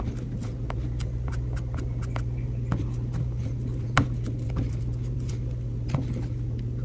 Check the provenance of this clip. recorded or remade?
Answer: recorded